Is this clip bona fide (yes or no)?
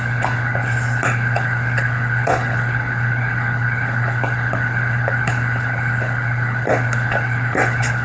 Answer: no